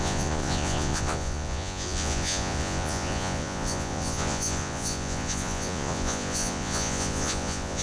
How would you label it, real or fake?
fake